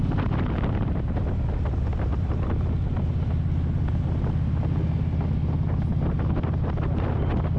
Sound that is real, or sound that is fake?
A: real